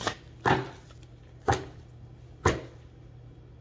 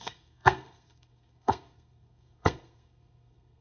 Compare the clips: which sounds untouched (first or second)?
first